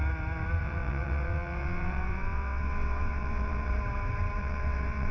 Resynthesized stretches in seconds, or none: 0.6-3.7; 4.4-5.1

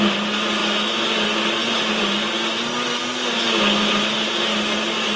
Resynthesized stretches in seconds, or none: none

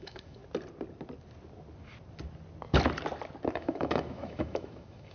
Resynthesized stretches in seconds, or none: 0.0-0.4; 3.5-5.1

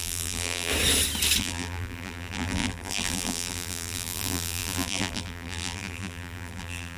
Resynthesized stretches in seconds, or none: 0.0-0.7; 1.4-7.0

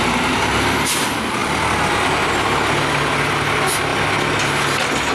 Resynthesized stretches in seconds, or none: none

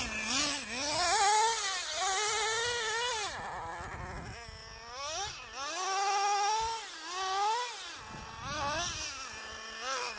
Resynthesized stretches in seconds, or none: none

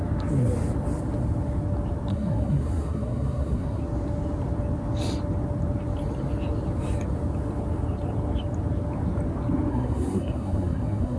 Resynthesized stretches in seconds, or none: 2.1-3.8; 9.7-11.2

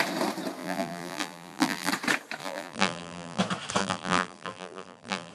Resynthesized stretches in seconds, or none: 0.6-1.9; 2.4-3.4; 3.8-5.3